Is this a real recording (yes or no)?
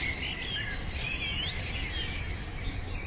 yes